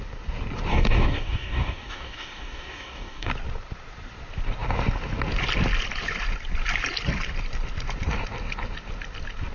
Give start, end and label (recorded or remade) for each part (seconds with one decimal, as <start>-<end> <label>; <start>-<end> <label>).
0.0-0.7 recorded; 0.7-3.3 remade; 3.3-9.5 recorded